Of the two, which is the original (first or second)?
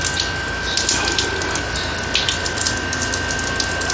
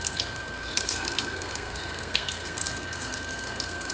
first